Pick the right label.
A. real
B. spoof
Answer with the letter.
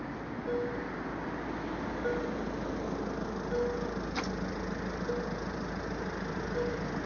A